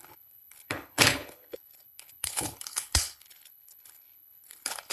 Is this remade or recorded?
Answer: remade